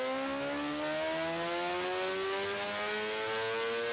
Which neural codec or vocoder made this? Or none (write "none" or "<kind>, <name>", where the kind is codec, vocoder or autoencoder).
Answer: none